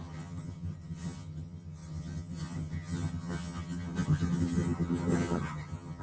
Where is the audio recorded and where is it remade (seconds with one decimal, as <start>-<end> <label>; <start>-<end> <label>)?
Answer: 0.0-6.0 remade